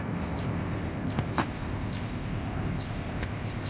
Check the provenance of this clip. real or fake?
fake